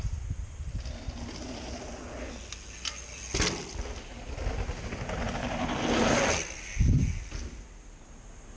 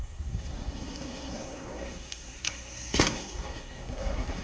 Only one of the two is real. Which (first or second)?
first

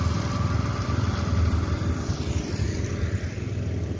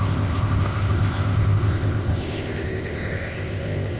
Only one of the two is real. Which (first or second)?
first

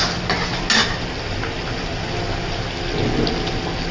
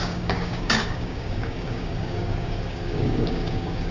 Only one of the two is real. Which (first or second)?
first